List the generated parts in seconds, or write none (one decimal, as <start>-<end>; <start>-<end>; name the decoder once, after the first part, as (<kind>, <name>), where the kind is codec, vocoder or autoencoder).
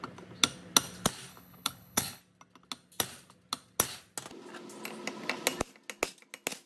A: 1.3-2.2 (codec, HILCodec)